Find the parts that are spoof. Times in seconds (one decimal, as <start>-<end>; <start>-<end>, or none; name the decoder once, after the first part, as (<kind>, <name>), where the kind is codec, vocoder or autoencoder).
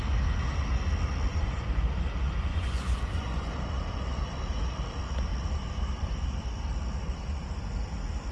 1.3-1.8 (vocoder, Vocos); 2.5-3.5